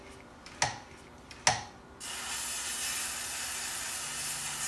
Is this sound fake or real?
real